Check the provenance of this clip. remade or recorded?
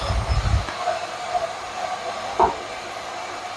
recorded